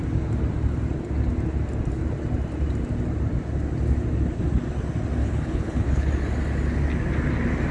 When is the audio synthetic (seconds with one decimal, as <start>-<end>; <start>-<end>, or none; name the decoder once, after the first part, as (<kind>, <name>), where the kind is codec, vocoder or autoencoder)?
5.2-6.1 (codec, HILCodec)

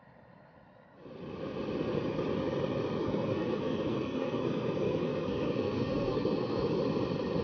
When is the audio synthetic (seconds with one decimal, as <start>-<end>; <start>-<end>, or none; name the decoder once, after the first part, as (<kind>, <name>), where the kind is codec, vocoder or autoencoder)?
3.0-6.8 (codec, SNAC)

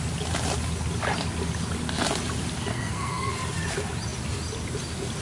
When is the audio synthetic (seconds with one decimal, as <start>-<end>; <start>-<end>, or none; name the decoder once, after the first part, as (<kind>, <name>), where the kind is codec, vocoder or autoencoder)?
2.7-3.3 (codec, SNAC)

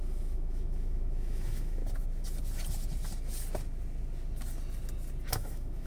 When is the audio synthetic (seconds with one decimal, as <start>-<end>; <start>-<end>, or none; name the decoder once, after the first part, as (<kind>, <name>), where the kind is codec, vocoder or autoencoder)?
0.0-1.8 (autoencoder, DAC-VAE); 5.3-5.9